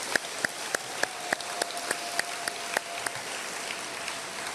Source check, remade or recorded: recorded